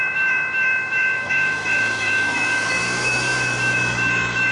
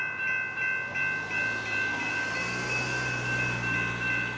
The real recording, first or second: second